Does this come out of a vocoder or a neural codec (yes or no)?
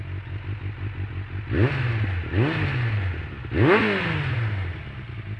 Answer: no